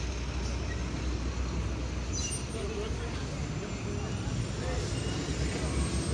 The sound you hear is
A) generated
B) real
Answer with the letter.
B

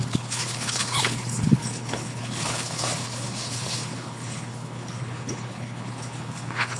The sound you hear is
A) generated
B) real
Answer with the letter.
A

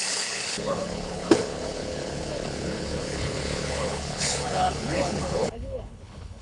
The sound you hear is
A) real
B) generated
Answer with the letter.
B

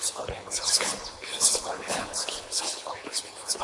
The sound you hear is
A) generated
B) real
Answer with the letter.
A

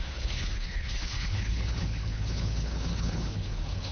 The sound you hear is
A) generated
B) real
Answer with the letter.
A